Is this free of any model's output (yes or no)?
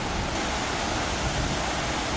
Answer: yes